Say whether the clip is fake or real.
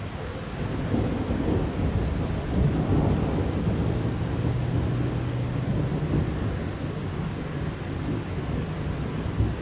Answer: real